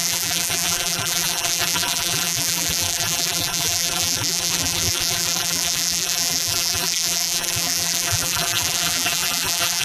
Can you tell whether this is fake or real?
fake